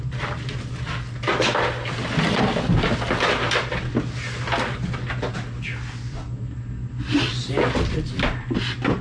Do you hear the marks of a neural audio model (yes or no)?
no